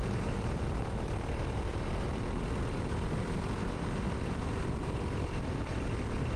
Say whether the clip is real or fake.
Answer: real